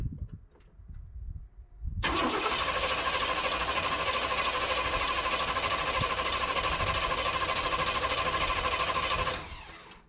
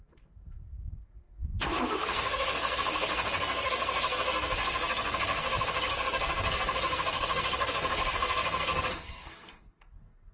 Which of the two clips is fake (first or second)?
second